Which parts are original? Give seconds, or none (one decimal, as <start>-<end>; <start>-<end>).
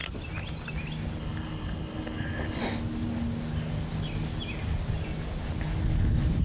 0.0-1.2; 2.6-6.4